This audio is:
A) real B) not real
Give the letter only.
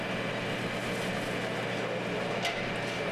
A